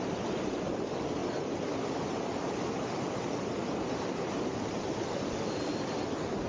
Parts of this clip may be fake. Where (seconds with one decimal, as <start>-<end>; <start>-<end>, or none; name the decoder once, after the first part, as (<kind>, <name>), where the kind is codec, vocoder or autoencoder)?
0.0-1.2 (vocoder, BigVGAN v2); 5.0-6.5